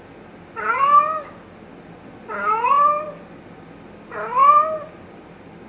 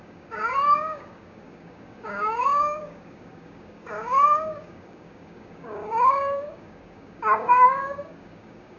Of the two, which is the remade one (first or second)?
second